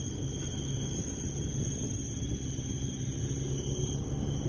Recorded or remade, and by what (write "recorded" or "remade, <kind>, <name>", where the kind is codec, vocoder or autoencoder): recorded